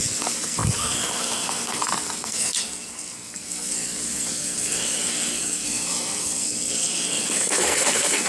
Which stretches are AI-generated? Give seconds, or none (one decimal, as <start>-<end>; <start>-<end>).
0.0-8.3